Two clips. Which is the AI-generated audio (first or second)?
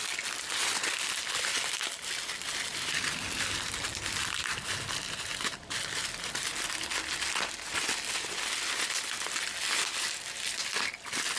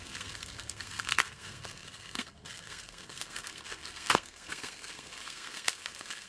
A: second